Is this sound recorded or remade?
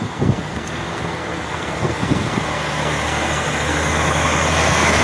remade